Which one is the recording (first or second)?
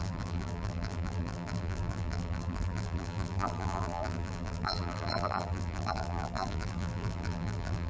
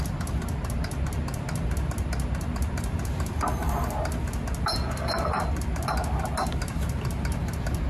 second